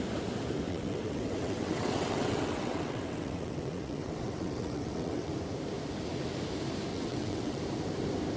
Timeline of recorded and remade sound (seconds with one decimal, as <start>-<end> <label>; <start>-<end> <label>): 0.0-0.7 recorded; 0.7-5.3 remade; 5.3-6.9 recorded; 6.9-7.6 remade; 7.6-8.4 recorded